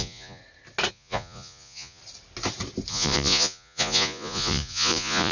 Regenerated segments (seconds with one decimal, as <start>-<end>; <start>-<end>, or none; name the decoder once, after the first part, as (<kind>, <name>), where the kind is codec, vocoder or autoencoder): 0.0-0.4 (vocoder, Vocos); 0.9-2.0; 2.9-5.3